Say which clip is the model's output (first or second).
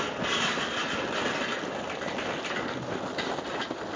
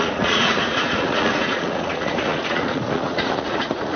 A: second